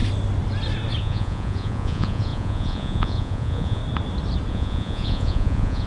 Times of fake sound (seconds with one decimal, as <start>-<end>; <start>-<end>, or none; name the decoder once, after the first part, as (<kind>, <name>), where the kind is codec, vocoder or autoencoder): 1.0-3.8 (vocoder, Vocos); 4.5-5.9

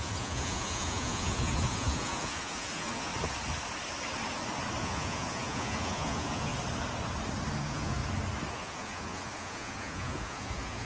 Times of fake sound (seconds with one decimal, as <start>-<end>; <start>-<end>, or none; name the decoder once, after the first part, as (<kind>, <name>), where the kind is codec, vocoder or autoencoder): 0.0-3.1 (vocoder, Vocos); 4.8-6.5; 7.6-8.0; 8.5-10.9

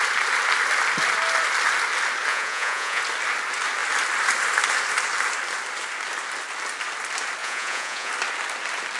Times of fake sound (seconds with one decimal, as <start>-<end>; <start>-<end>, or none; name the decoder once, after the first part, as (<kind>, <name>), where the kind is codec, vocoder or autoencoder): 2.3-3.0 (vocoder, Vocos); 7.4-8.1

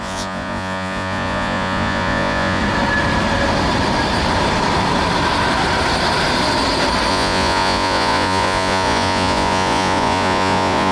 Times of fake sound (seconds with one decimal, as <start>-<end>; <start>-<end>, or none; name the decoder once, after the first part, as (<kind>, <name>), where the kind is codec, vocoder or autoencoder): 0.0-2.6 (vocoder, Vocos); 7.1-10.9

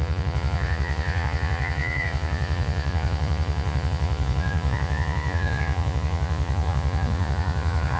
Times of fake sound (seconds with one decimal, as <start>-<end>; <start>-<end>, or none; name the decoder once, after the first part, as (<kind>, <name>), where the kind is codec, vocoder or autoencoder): 0.0-8.0 (vocoder, Vocos)

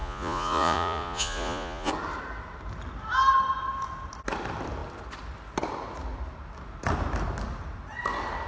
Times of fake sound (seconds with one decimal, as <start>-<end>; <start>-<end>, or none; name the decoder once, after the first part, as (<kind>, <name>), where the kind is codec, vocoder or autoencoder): 0.0-1.9 (vocoder, Vocos)

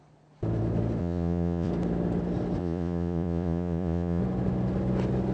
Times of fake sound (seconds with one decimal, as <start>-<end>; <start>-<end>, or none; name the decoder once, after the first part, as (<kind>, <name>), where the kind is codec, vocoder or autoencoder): 1.0-1.7 (vocoder, Vocos); 2.6-4.2

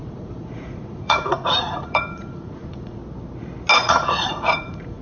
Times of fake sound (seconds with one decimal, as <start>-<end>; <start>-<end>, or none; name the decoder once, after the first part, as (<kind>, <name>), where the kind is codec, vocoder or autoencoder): 0.0-3.0 (vocoder, Vocos); 3.8-5.0